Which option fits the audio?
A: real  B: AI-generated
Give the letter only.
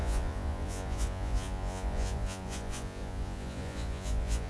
B